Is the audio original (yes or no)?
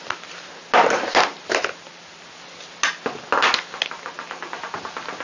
yes